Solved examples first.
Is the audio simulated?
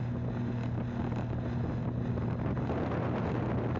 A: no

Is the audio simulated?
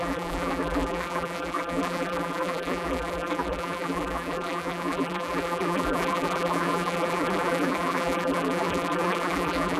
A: yes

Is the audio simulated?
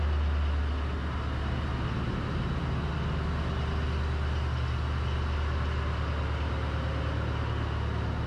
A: no